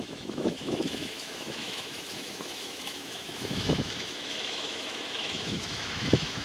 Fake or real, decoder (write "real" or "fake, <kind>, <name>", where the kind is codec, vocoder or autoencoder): fake, autoencoder, DAC-VAE